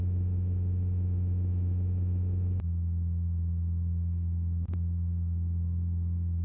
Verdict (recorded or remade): remade